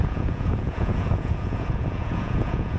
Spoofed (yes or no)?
yes